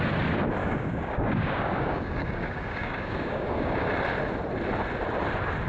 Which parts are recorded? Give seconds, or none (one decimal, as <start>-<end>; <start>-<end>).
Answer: 0.0-0.6; 3.9-5.7